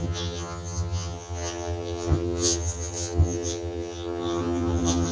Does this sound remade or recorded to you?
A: remade